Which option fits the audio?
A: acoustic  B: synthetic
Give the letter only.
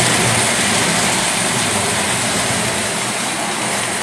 A